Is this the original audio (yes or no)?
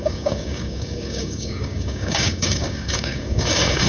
no